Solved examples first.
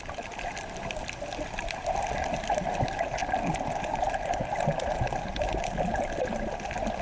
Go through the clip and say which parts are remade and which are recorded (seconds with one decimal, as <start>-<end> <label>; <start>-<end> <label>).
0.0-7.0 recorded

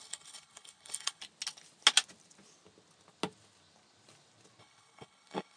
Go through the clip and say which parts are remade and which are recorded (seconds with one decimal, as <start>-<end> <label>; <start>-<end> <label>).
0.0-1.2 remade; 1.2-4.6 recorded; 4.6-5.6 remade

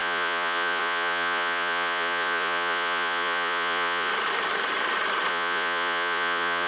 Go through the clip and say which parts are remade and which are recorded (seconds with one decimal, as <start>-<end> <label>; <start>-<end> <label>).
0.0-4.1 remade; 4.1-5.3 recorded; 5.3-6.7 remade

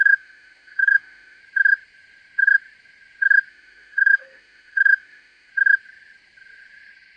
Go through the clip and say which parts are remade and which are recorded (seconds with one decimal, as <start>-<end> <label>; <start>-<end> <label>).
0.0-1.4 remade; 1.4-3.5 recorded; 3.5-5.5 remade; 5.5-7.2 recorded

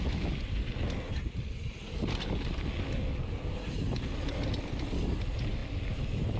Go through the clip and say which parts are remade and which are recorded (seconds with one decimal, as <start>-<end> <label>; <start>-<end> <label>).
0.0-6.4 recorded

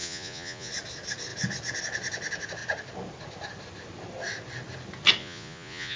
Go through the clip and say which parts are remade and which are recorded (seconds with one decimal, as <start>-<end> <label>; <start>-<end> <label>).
0.0-0.7 remade; 0.7-5.2 recorded; 5.2-6.0 remade